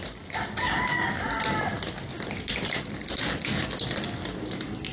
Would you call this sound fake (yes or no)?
no